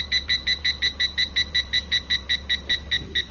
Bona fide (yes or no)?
yes